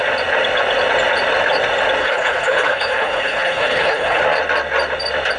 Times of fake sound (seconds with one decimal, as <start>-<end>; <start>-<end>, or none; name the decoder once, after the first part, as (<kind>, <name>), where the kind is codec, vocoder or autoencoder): 2.0-4.2 (codec, HILCodec)